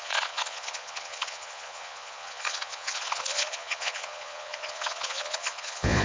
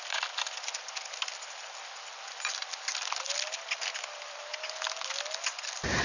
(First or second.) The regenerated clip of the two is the first